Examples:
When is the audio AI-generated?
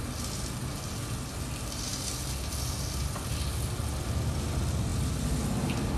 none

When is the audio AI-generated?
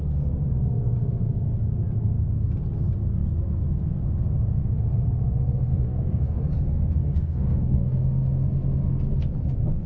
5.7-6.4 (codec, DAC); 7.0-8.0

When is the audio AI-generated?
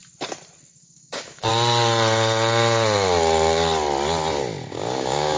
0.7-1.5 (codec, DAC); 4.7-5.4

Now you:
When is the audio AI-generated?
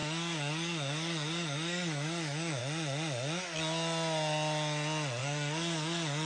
0.0-2.6 (codec, DAC); 5.2-6.3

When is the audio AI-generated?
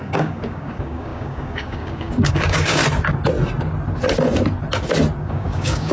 0.0-2.8 (codec, DAC); 5.2-5.9